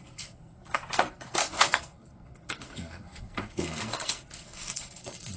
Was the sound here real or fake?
fake